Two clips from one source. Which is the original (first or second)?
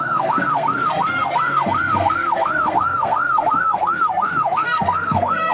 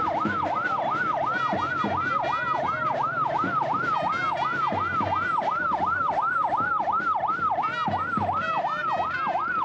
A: second